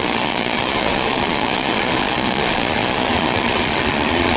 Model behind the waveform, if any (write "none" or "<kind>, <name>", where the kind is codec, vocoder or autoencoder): vocoder, Vocos